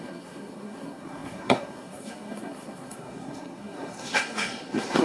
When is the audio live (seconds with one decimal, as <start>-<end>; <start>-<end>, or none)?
none